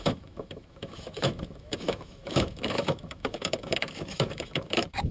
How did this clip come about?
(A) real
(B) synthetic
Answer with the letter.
B